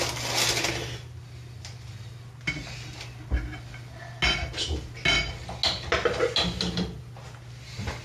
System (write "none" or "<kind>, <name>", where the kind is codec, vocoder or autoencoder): none